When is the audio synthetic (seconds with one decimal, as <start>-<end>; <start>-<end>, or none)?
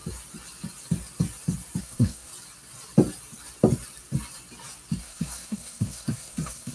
1.8-2.3; 5.0-6.7